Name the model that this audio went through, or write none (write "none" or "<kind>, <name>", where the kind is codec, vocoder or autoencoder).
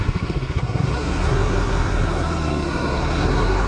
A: codec, SNAC